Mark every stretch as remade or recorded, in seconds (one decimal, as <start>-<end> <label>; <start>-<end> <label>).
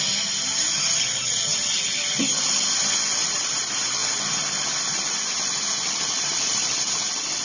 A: 0.0-7.4 recorded